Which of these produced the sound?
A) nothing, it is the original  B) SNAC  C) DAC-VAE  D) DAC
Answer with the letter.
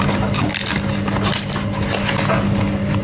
A